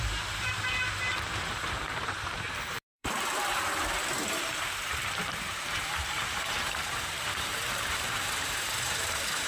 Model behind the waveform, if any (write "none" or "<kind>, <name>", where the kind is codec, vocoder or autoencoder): vocoder, BigVGAN v2